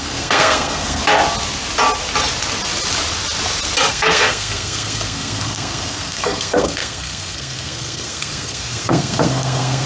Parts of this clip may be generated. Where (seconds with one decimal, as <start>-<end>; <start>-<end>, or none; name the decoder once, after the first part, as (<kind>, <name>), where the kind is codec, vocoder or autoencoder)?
0.0-1.0 (codec, SNAC); 3.9-9.9